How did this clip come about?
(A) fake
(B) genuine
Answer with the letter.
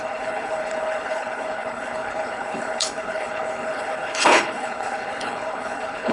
A